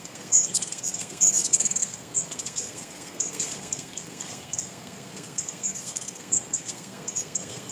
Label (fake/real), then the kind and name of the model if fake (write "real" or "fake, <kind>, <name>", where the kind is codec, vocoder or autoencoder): fake, codec, SNAC